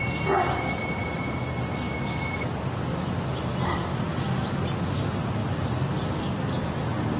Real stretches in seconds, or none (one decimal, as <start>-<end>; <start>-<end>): 0.0-5.4; 6.1-7.2